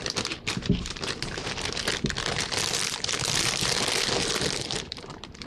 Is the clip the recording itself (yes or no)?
no